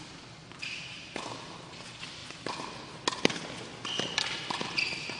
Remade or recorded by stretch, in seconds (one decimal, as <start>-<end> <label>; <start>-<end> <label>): 0.0-5.2 recorded